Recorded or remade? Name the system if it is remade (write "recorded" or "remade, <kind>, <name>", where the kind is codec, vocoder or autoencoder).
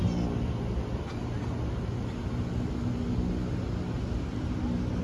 recorded